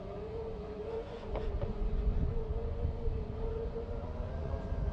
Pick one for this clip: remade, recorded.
remade